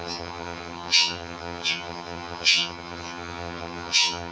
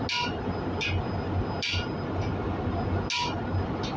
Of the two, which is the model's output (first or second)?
first